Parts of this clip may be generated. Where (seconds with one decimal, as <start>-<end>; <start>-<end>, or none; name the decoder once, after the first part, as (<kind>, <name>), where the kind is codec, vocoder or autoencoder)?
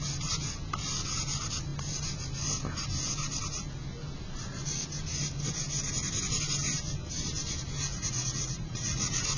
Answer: 7.9-9.4 (vocoder, Vocos)